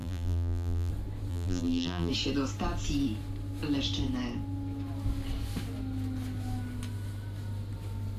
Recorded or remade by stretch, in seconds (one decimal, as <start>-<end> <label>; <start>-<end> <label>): 0.0-0.9 remade; 0.9-1.3 recorded; 1.3-2.1 remade; 2.1-8.2 recorded